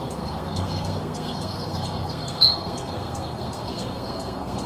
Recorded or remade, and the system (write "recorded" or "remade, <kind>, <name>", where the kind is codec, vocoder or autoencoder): remade, codec, SNAC